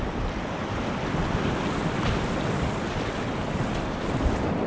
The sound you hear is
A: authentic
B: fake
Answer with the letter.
A